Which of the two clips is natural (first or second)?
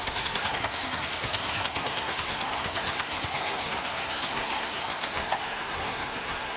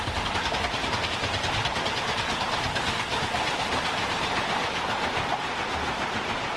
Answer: second